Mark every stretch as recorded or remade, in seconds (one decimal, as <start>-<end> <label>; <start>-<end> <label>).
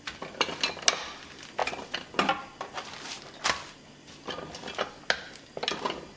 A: 0.0-6.2 recorded